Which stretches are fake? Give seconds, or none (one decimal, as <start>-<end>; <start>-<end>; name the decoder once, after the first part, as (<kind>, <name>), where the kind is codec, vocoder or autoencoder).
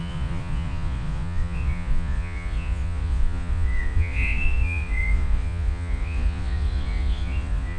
0.0-7.8 (vocoder, Vocos)